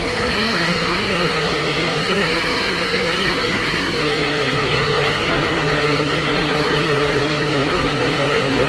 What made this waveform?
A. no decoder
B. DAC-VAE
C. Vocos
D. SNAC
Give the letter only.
D